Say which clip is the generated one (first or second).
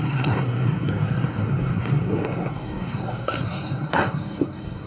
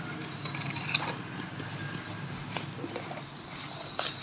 first